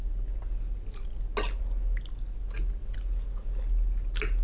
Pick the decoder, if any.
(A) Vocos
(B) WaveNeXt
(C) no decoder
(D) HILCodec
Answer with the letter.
C